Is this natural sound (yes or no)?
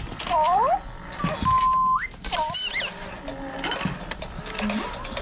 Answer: yes